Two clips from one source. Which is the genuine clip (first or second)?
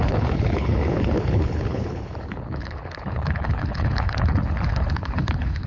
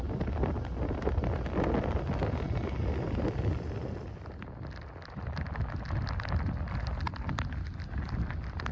second